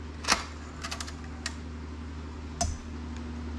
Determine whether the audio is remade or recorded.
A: recorded